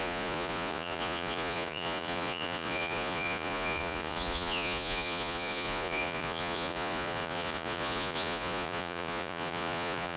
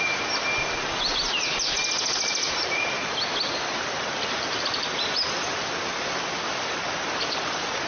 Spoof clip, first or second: first